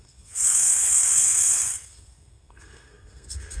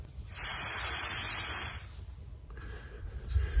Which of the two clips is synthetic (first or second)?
first